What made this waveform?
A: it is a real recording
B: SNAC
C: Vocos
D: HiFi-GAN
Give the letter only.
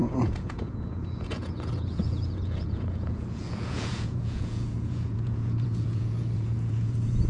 C